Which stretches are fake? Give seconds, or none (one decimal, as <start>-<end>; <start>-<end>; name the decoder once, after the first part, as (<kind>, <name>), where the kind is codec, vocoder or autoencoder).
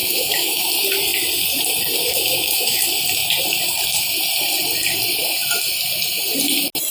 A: 0.0-0.7 (autoencoder, DAC-VAE); 2.0-2.8